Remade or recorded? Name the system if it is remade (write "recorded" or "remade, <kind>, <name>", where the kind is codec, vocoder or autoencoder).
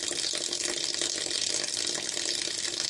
recorded